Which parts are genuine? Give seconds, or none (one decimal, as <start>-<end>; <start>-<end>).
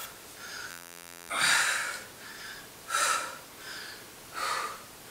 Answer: 0.0-0.7; 1.3-5.1